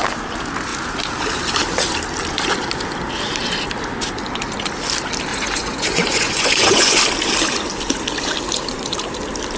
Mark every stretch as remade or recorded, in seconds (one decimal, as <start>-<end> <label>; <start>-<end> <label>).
0.0-5.3 recorded; 5.3-7.0 remade; 7.0-9.6 recorded